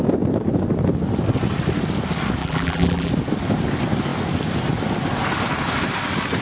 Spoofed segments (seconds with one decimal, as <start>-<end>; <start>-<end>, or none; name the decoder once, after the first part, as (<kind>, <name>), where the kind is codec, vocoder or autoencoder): 2.4-3.1 (vocoder, BigVGAN v2)